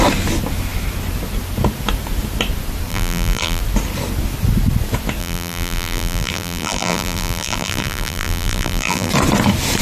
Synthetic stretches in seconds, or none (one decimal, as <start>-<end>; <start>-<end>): 2.9-3.6; 5.2-9.1